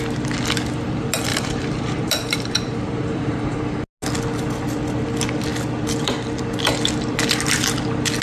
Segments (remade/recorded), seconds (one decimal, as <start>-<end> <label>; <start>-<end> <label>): 0.0-1.3 recorded; 1.3-3.6 remade; 3.6-8.2 recorded

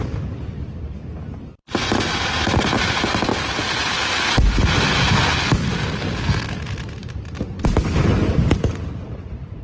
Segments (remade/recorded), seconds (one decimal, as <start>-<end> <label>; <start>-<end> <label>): 0.0-1.6 recorded; 1.6-3.5 remade; 3.5-7.0 recorded; 7.0-7.7 remade; 7.7-9.6 recorded

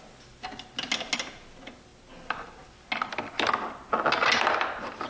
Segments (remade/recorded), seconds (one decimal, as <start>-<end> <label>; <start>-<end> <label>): 0.0-5.1 recorded

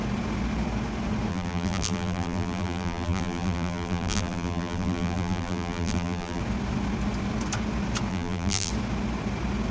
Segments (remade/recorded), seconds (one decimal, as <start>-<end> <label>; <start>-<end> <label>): 0.0-1.3 recorded; 1.3-6.4 remade; 6.4-8.1 recorded; 8.1-8.7 remade; 8.7-9.7 recorded

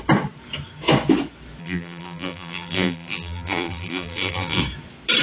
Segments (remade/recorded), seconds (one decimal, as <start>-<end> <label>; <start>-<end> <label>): 0.0-1.6 recorded; 1.6-4.6 remade; 4.6-5.2 recorded

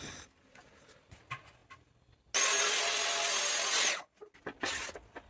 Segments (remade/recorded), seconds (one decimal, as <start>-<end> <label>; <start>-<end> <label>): 0.0-5.3 recorded

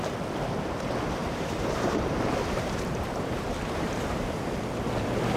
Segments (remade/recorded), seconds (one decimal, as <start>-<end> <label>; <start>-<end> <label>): 0.0-1.2 recorded; 1.2-4.4 remade; 4.4-5.4 recorded

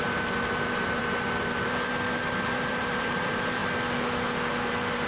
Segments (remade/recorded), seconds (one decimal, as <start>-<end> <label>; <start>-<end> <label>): 0.0-1.0 remade; 1.0-2.4 recorded; 2.4-3.6 remade; 3.6-5.1 recorded